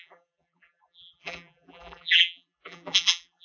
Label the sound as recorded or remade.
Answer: remade